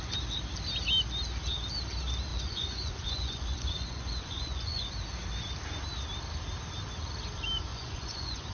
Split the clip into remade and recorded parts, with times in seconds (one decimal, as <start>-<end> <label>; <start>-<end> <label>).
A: 0.0-2.3 recorded; 2.3-4.9 remade; 4.9-7.7 recorded; 7.7-8.5 remade